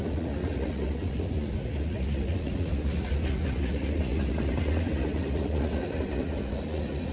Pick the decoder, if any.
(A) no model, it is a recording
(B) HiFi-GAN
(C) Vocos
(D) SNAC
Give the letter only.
C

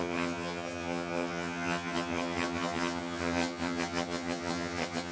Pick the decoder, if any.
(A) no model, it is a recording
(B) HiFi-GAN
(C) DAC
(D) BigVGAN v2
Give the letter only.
B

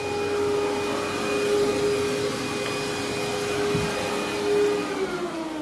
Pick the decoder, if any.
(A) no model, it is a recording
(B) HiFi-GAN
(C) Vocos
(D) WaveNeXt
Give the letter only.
A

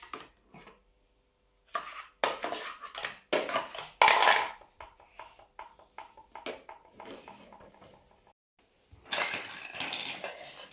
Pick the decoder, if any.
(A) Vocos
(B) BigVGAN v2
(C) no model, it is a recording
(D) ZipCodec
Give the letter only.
C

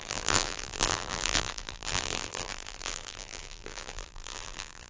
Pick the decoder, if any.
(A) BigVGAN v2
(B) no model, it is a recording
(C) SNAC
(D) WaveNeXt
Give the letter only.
A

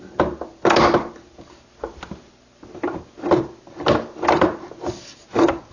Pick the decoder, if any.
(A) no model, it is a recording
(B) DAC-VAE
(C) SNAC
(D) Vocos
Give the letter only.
A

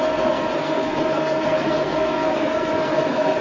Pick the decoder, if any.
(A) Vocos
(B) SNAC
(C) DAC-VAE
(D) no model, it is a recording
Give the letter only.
B